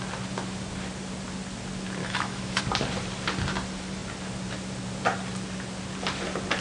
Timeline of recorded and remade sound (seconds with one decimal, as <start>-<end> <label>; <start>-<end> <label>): 0.0-2.0 recorded; 2.0-2.6 remade; 2.6-6.6 recorded